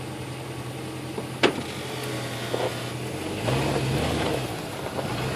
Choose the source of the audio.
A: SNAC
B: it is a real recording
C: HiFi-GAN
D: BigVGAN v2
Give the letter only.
B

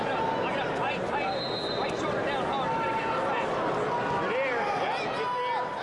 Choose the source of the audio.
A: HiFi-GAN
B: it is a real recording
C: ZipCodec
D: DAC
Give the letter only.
B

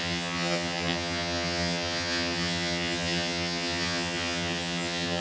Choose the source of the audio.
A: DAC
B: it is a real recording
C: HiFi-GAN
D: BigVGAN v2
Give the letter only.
C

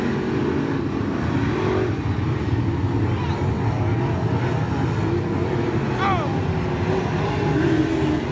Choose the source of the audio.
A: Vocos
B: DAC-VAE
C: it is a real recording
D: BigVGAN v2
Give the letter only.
C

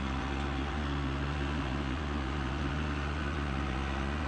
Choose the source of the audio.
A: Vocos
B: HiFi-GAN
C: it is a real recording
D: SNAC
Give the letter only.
A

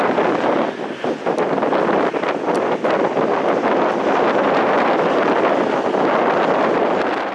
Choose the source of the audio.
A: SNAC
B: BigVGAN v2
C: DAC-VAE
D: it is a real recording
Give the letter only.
D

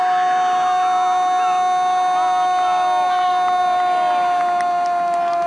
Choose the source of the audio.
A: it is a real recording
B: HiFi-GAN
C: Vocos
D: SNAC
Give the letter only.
A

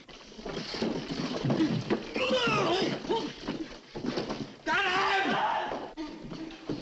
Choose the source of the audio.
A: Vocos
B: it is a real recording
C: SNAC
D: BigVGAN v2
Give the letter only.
B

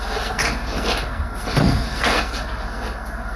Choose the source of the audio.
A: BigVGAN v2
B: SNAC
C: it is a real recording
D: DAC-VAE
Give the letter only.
B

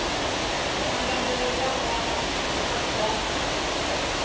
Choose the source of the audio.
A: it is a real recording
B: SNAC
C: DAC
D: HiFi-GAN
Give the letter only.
A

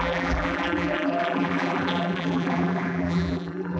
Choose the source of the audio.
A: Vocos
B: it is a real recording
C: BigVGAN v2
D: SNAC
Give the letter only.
C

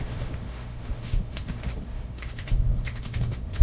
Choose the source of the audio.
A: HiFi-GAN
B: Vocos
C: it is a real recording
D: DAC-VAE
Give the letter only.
D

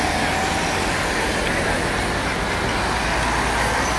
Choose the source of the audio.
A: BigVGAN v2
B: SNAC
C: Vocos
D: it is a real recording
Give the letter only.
D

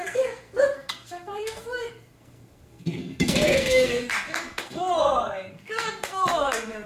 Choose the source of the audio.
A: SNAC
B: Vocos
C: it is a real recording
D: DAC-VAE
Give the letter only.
A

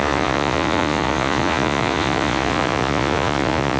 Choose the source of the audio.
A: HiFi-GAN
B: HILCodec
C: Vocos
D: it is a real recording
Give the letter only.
C